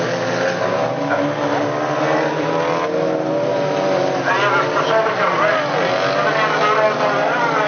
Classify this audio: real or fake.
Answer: real